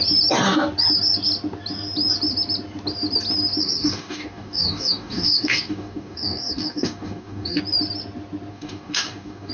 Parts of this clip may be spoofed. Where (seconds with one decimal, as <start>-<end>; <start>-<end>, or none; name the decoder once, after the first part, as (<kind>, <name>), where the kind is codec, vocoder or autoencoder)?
3.6-7.6 (codec, DAC); 8.5-9.5